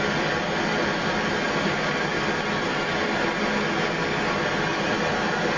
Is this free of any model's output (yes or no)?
yes